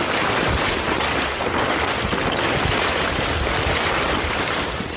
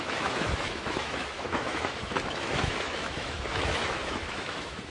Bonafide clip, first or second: first